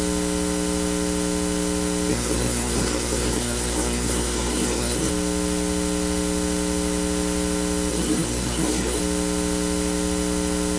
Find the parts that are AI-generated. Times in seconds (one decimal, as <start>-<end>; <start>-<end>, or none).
2.1-5.1; 7.9-9.0